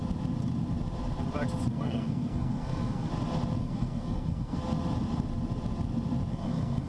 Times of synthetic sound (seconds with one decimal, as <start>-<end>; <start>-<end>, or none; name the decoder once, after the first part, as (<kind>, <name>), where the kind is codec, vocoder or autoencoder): 1.7-3.1 (codec, SNAC); 3.6-4.6; 6.3-6.9